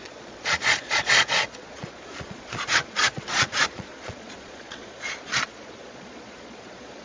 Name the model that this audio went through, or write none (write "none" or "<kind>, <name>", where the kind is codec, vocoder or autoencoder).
vocoder, Vocos